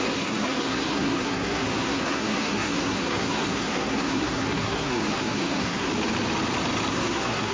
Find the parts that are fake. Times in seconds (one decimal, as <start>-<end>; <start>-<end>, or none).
0.0-5.9; 6.9-7.5